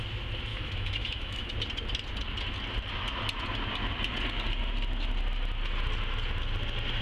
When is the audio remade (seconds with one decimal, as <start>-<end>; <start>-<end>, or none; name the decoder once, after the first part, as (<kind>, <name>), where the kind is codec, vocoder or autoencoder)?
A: 0.5-1.5 (autoencoder, DAC-VAE)